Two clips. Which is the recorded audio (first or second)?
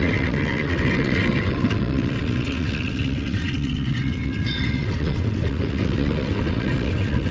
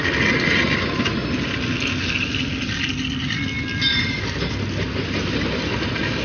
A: second